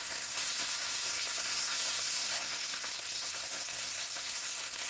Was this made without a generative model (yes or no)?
no